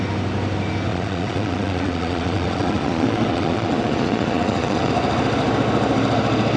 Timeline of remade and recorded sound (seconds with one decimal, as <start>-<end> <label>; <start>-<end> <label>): 0.0-0.9 recorded; 0.9-4.9 remade; 4.9-6.6 recorded